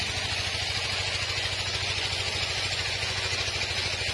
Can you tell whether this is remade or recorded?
remade